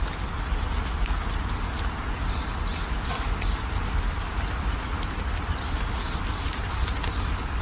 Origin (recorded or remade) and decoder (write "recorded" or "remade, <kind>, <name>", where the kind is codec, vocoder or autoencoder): recorded